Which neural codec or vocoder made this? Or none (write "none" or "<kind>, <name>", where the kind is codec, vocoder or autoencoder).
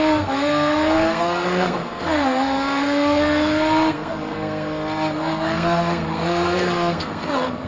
codec, SNAC